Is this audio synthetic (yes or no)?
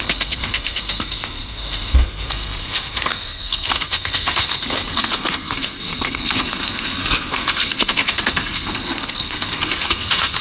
yes